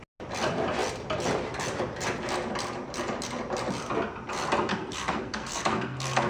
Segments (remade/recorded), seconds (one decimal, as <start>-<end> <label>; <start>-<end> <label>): 0.0-4.7 recorded; 4.7-6.3 remade